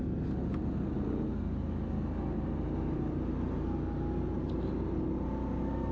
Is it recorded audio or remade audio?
recorded